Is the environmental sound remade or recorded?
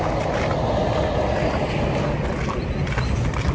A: recorded